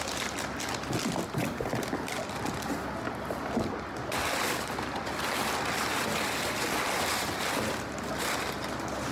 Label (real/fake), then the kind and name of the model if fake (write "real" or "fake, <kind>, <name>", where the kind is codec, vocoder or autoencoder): real